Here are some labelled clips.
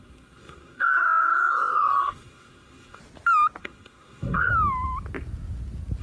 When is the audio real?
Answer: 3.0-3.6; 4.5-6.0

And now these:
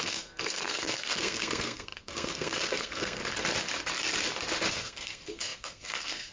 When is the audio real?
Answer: 3.2-4.7

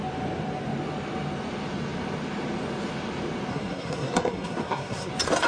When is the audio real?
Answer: 0.0-3.5; 5.1-5.5

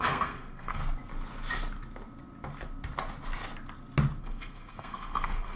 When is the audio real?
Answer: 0.8-4.2

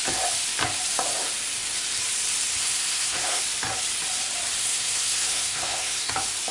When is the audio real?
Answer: 0.0-2.6; 3.4-4.6; 6.1-6.5

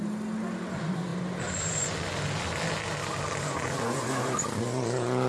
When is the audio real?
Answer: 0.0-5.3

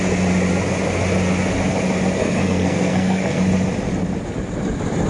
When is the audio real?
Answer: 0.0-2.2; 3.4-5.1